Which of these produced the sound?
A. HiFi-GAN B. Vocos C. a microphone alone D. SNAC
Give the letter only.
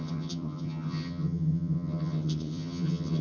A